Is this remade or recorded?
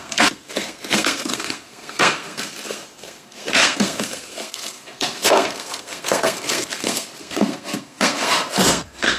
remade